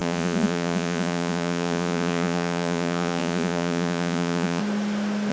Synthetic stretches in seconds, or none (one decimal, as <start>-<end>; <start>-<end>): 0.0-4.6